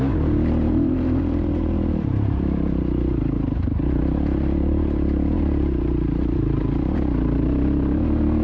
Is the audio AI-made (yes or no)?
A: yes